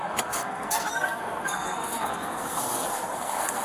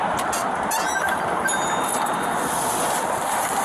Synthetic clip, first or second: first